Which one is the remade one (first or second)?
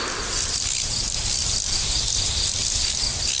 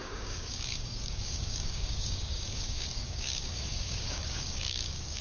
second